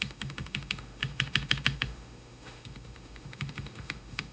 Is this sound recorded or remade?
remade